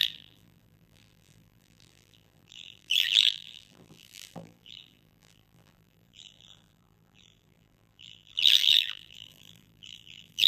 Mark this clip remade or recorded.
remade